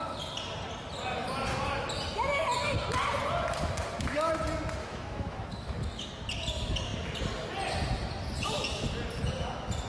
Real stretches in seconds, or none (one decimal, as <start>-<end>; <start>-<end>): 0.0-4.8; 6.1-9.9